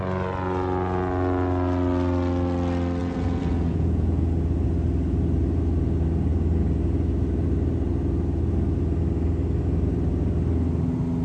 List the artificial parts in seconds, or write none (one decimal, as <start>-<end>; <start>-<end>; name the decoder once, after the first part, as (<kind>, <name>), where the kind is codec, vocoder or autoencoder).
3.0-4.2 (vocoder, Vocos)